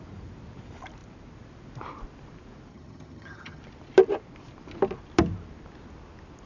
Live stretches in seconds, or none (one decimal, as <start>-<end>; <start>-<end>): 0.0-2.7; 3.6-6.5